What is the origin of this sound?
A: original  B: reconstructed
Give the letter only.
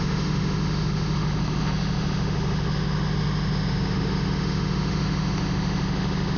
B